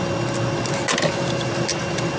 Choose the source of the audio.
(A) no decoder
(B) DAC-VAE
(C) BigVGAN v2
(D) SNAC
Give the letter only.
A